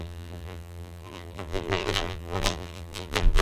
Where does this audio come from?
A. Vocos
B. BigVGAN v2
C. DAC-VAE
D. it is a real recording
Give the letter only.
B